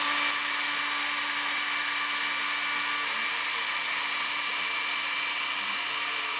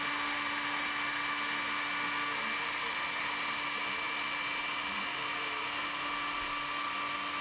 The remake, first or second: first